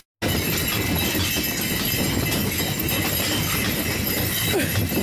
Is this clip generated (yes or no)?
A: no